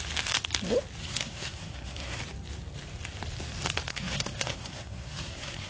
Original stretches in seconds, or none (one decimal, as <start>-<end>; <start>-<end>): 0.0-1.0; 2.2-3.9